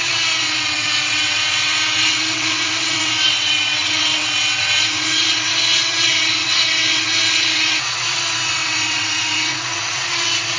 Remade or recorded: remade